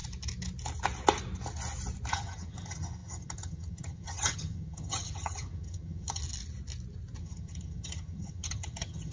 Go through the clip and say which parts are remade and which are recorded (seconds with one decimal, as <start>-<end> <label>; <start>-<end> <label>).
0.0-2.1 recorded; 2.1-6.2 remade; 6.2-7.2 recorded; 7.2-9.1 remade